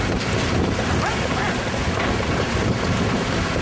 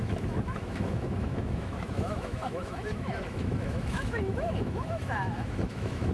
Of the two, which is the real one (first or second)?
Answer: first